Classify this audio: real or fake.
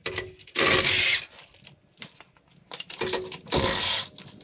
real